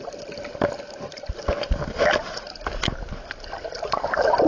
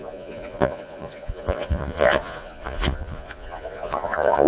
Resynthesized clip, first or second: second